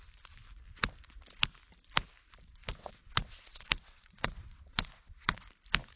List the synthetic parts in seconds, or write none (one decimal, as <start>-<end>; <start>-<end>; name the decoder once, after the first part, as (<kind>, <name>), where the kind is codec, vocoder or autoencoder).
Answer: 2.6-5.5 (vocoder, WaveNeXt)